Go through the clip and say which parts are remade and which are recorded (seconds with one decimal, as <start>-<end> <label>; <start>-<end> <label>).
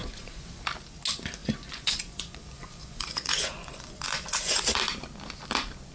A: 0.0-0.6 remade; 0.6-1.4 recorded; 1.4-4.6 remade; 4.6-5.9 recorded